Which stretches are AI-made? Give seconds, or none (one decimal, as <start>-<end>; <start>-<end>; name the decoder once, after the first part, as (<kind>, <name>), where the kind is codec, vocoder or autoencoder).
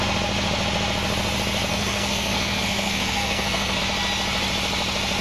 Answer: 1.7-3.8 (codec, SNAC)